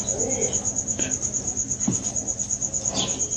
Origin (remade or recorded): recorded